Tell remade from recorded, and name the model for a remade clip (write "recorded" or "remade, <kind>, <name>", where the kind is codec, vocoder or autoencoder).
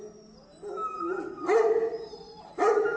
recorded